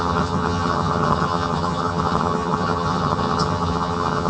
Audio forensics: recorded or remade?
remade